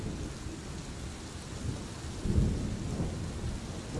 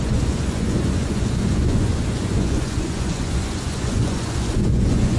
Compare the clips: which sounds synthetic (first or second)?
second